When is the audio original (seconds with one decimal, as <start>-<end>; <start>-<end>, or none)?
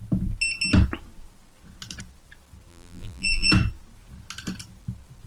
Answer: 0.0-2.7; 3.5-5.3